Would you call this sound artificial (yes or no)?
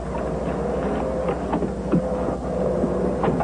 no